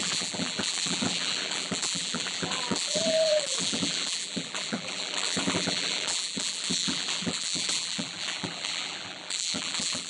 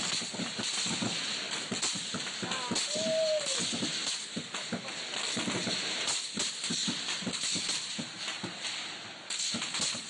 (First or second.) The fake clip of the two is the first